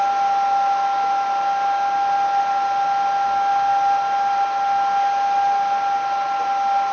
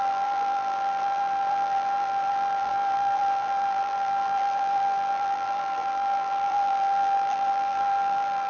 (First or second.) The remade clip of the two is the second